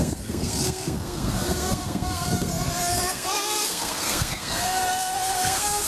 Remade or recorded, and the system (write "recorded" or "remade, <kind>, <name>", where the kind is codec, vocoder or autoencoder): remade, codec, SNAC